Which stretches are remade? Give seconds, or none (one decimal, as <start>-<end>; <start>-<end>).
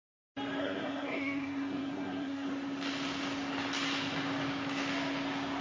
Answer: 0.6-2.5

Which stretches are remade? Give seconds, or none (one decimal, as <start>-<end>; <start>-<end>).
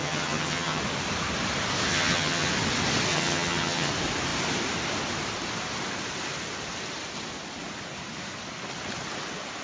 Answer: 0.0-0.8; 1.9-2.5; 3.1-3.9